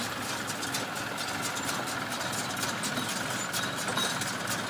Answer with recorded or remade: recorded